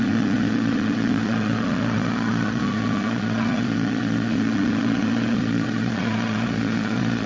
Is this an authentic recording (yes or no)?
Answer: no